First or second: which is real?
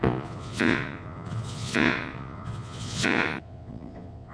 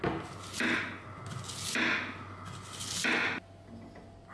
second